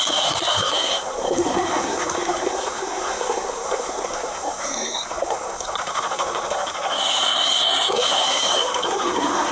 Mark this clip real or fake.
fake